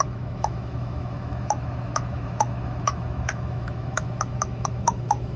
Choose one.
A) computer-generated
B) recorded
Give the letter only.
A